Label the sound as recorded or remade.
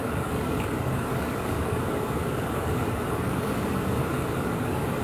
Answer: remade